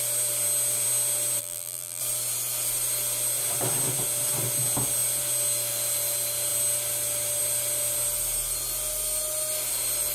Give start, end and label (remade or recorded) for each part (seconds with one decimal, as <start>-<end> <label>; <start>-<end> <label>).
0.0-1.4 recorded; 1.4-2.0 remade; 2.0-10.1 recorded